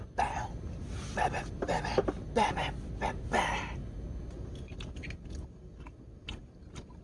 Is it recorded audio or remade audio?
recorded